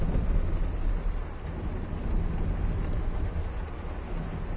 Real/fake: real